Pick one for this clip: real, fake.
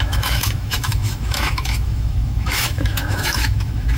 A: fake